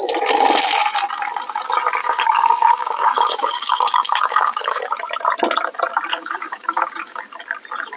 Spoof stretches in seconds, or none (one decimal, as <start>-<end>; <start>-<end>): 2.0-4.8; 6.1-7.2